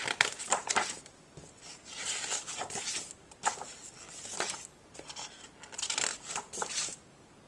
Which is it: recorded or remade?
recorded